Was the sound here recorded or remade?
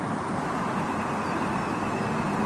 recorded